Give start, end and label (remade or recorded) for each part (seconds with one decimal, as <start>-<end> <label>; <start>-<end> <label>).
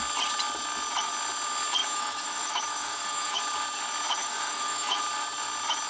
0.0-1.8 recorded; 1.8-3.4 remade; 3.4-4.2 recorded; 4.2-5.0 remade; 5.0-5.9 recorded